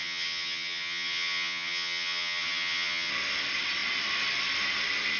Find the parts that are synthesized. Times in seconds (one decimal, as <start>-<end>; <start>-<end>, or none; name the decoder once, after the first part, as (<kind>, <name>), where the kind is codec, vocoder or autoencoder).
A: 0.0-3.1 (vocoder, HiFi-GAN)